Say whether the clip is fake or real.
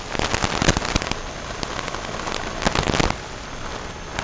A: real